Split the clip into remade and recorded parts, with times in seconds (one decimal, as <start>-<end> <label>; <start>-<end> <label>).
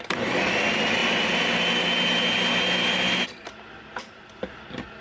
0.0-5.0 recorded